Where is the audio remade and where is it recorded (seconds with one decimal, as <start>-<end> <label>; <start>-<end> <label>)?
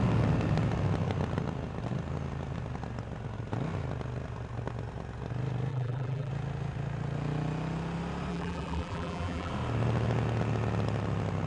0.0-5.7 recorded; 5.7-6.3 remade; 6.3-8.3 recorded; 8.3-9.5 remade; 9.5-11.5 recorded